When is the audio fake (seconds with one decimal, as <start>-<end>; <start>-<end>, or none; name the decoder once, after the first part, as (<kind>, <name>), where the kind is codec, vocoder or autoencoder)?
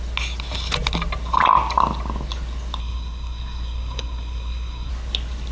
2.8-4.9 (codec, SNAC)